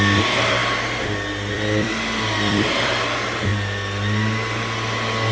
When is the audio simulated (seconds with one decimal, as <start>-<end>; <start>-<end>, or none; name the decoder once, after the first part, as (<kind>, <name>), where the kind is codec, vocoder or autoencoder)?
0.0-0.6 (vocoder, BigVGAN v2); 1.5-3.5